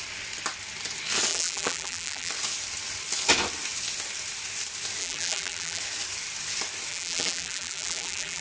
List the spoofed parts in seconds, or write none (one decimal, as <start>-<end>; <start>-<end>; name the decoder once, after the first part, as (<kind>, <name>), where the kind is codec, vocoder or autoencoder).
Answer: 1.3-2.3 (vocoder, BigVGAN v2); 5.0-5.8; 6.9-8.4